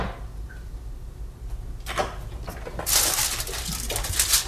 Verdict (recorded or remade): recorded